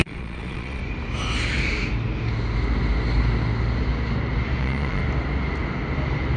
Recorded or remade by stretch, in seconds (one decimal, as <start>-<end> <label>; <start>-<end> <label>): 0.0-0.8 remade; 0.8-4.6 recorded; 4.6-5.0 remade; 5.0-6.4 recorded